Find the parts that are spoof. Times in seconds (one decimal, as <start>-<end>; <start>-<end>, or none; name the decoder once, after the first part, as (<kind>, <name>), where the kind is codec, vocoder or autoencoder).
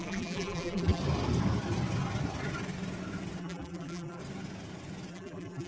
0.0-1.0 (vocoder, BigVGAN v2); 3.4-4.2; 5.1-5.7